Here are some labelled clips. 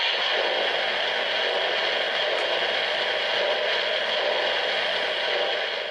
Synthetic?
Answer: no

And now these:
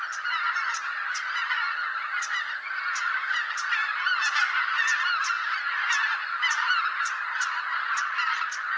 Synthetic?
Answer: no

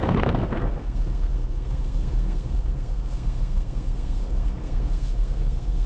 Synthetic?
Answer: yes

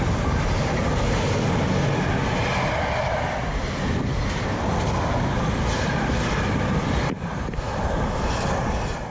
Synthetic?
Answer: no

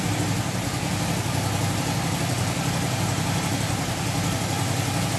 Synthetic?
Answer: no